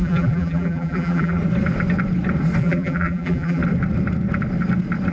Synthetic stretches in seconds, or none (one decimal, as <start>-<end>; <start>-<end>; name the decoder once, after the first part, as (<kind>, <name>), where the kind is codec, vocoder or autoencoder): 0.0-1.4 (vocoder, BigVGAN v2); 2.6-3.6